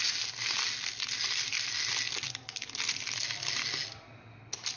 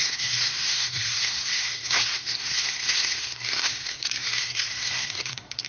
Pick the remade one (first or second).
second